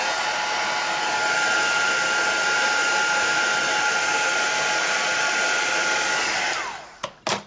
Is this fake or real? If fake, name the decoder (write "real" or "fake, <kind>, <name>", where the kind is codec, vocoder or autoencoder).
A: real